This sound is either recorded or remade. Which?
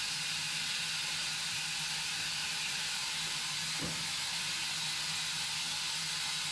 recorded